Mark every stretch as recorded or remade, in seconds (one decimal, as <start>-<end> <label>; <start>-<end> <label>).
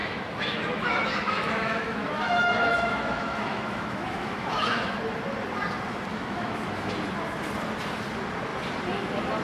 0.0-5.0 remade; 5.0-6.1 recorded; 6.1-6.9 remade; 6.9-9.4 recorded